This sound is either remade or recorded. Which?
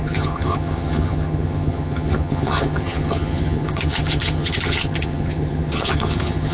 remade